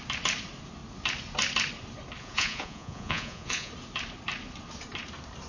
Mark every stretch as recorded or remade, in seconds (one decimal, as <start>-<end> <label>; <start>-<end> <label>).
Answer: 0.0-2.2 recorded; 2.2-3.7 remade; 3.7-5.5 recorded